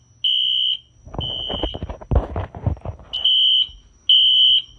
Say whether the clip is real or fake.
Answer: real